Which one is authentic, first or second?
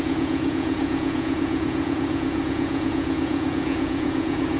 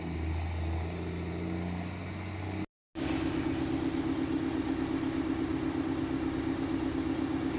second